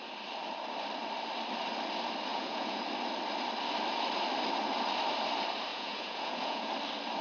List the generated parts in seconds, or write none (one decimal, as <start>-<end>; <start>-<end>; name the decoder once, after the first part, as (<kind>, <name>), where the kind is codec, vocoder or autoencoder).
2.3-2.8 (vocoder, Vocos); 5.7-6.7